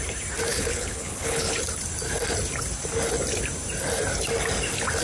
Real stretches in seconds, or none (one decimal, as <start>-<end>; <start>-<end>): 0.0-0.5; 1.5-5.0